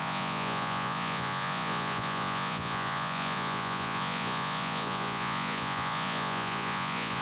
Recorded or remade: remade